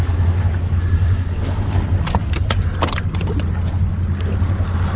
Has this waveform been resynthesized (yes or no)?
no